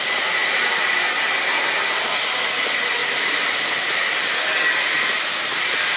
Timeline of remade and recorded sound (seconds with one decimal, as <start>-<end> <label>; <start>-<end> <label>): 0.0-0.4 recorded; 0.4-1.5 remade; 1.5-3.0 recorded; 3.0-4.0 remade; 4.0-6.0 recorded